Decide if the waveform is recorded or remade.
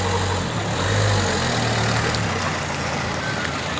recorded